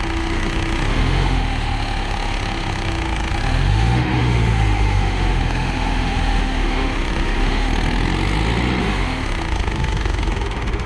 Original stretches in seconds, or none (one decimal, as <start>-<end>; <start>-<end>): 7.7-8.8